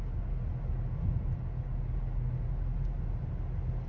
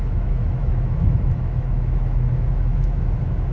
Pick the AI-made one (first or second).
second